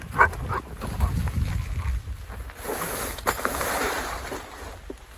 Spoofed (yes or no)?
no